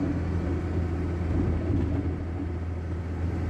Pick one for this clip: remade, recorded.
recorded